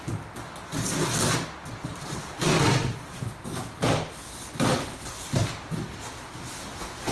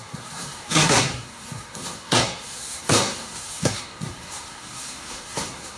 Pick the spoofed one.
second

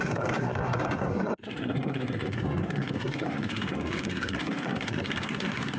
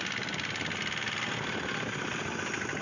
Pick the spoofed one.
first